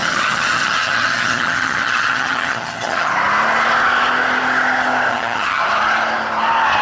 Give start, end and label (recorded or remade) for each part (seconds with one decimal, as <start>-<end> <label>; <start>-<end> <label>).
0.0-3.1 remade; 3.1-5.1 recorded; 5.1-5.6 remade; 5.6-6.8 recorded